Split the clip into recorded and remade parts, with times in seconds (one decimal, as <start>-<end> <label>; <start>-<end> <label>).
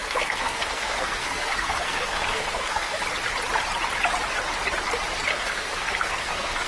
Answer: 0.0-3.0 remade; 3.0-5.3 recorded; 5.3-6.7 remade